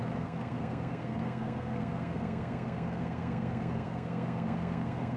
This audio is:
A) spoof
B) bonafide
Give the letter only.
A